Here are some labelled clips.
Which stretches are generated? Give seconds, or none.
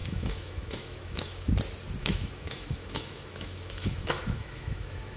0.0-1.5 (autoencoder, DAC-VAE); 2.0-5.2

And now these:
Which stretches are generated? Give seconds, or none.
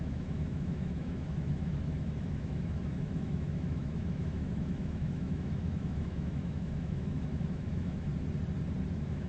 0.0-8.1 (autoencoder, DAC-VAE); 8.9-9.3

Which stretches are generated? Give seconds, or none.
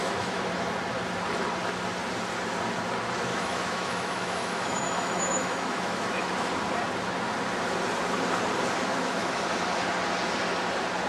0.0-0.5 (autoencoder, DAC-VAE); 3.3-6.3; 8.9-9.4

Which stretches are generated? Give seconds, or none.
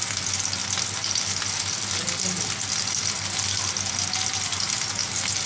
none